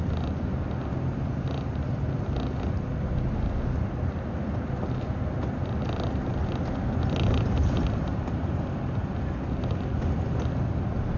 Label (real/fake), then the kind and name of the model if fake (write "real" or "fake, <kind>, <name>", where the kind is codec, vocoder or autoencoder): real